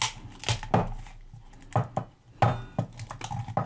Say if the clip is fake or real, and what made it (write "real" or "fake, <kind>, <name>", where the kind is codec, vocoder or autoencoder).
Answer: real